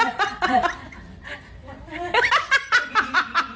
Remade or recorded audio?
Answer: remade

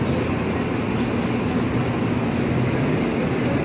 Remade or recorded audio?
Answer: recorded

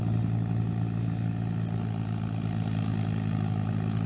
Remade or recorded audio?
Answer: recorded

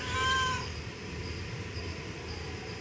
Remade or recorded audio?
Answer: remade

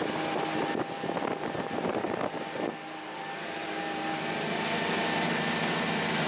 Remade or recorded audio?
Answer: recorded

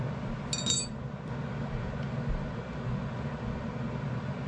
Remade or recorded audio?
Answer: recorded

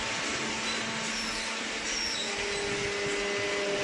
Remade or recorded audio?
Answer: recorded